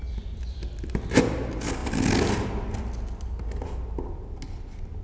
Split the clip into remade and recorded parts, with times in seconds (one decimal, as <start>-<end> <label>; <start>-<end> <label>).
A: 0.0-5.0 recorded